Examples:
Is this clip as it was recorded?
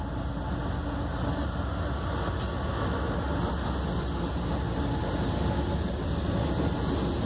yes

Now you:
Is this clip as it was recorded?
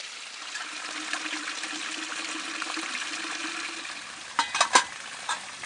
yes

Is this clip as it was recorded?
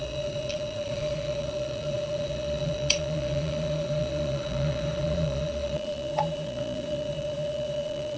no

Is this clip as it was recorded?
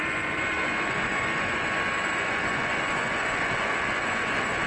no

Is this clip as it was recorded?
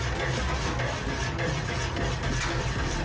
yes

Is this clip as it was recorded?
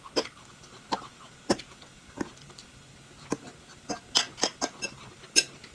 yes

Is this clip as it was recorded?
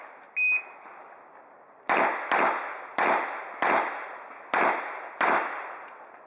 yes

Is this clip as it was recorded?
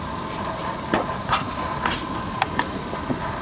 yes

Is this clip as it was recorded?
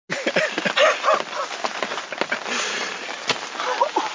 yes